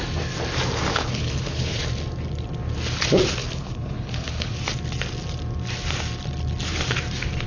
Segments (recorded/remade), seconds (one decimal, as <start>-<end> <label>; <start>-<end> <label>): 0.0-0.9 recorded; 0.9-1.8 remade; 1.8-3.4 recorded; 3.4-4.5 remade; 4.5-7.5 recorded